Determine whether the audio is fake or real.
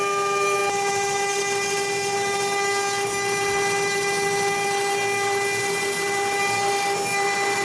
real